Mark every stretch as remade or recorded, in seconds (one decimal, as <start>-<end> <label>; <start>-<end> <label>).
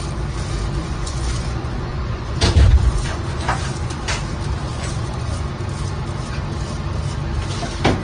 0.0-0.8 recorded; 0.8-4.1 remade; 4.1-4.7 recorded; 4.7-5.5 remade; 5.5-8.0 recorded